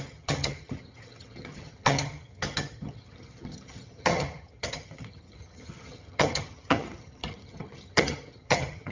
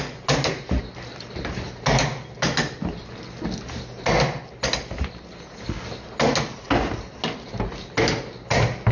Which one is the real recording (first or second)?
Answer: second